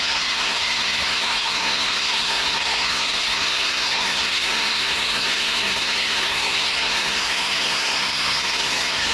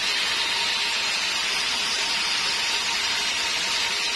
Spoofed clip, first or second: first